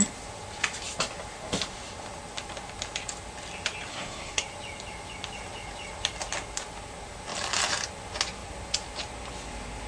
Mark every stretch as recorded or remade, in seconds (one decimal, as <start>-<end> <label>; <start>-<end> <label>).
0.0-3.9 recorded; 3.9-4.4 remade; 4.4-9.9 recorded